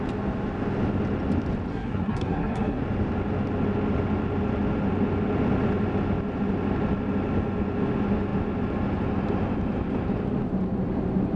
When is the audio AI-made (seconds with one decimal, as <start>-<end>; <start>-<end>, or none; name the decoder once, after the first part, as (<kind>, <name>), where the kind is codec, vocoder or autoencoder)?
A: 1.7-2.8 (codec, SNAC)